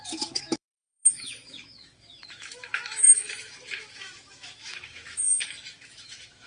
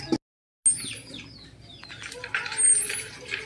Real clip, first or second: second